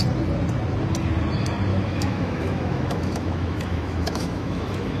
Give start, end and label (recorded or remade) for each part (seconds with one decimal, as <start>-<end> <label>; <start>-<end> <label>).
0.0-1.7 recorded; 1.7-5.0 remade